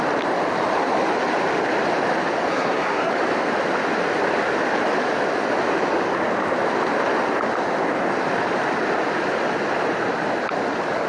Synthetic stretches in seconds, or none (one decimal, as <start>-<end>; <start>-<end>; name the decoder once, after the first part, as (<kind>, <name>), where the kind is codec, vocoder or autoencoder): 2.5-3.1 (codec, SNAC)